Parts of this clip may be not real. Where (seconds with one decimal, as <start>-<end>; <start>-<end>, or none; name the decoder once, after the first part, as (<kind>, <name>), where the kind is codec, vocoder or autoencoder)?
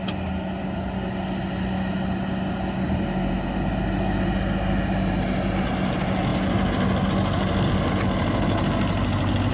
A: none